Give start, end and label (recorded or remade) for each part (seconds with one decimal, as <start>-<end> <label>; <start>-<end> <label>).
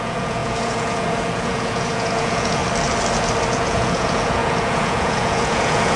0.0-2.6 remade; 2.6-3.5 recorded; 3.5-6.0 remade